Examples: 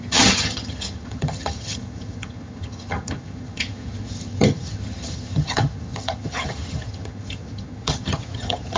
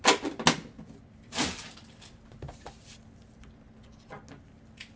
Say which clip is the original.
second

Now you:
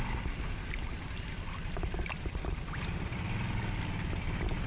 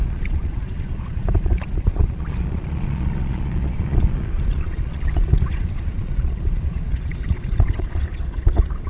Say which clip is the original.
first